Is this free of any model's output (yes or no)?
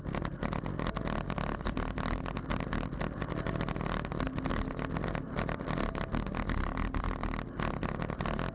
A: yes